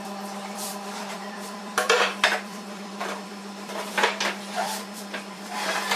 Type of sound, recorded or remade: remade